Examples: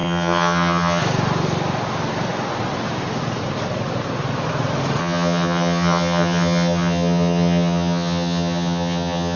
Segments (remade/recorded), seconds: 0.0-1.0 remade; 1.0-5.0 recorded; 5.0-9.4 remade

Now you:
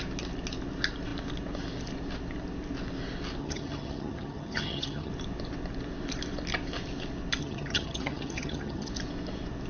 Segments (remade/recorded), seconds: 0.0-3.4 recorded; 3.4-5.1 remade; 5.1-7.4 recorded; 7.4-8.9 remade; 8.9-9.7 recorded

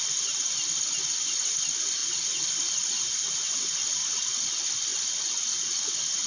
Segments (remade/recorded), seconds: 0.0-6.3 recorded

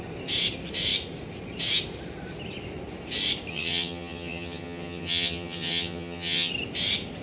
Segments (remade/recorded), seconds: 0.0-3.5 recorded; 3.5-6.5 remade; 6.5-7.2 recorded

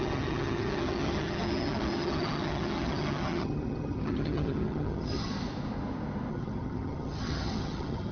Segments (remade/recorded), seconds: 0.0-5.3 remade; 5.3-6.3 recorded; 6.3-8.1 remade